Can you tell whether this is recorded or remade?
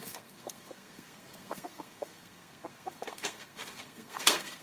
remade